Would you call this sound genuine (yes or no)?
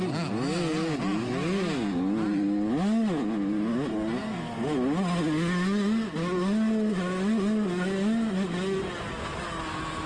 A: yes